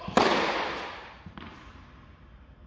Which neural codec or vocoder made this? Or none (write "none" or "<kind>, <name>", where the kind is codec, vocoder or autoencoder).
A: none